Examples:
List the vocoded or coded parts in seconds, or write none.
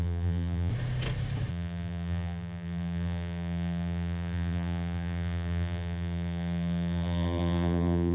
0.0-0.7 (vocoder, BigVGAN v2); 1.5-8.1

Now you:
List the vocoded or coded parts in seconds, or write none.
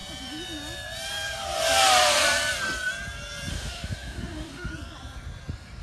3.5-4.7 (autoencoder, DAC-VAE)